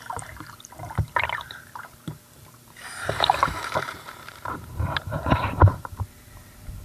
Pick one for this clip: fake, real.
fake